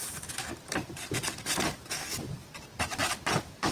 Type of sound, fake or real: real